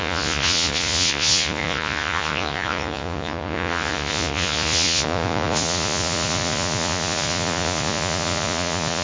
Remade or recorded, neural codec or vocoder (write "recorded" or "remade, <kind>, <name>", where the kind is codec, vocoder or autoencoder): remade, vocoder, Vocos